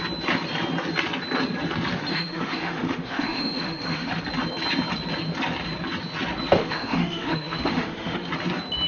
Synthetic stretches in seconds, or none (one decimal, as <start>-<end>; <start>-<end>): 2.1-4.1; 6.5-8.3